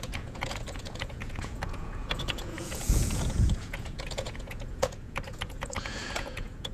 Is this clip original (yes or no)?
no